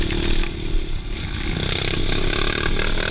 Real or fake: real